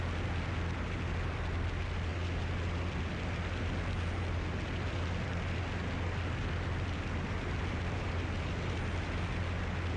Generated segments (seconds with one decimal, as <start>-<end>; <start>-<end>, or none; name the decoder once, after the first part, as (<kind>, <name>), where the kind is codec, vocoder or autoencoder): none